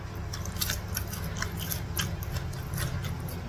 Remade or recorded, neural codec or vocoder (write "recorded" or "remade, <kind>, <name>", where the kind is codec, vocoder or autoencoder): recorded